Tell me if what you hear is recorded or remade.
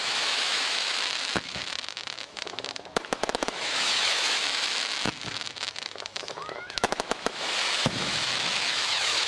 remade